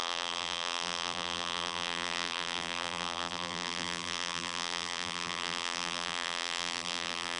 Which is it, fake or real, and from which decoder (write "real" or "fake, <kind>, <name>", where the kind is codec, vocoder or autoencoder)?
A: fake, vocoder, BigVGAN v2